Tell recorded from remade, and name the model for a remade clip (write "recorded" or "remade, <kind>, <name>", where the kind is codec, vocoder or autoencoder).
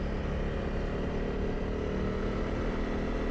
recorded